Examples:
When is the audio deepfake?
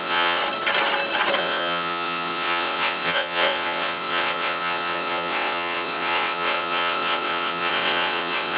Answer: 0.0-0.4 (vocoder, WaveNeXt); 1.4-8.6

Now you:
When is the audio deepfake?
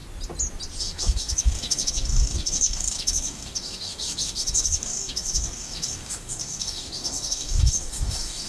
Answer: 0.8-8.5 (codec, DAC)